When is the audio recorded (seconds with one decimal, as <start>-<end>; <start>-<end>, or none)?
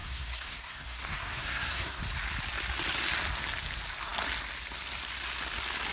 2.0-5.9